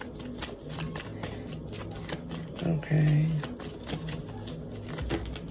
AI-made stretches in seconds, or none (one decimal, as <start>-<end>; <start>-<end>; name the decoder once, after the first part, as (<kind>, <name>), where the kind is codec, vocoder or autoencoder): none